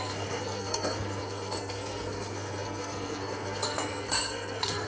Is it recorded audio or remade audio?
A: remade